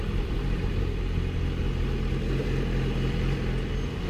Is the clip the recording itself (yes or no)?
yes